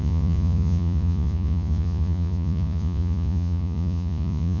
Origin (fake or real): fake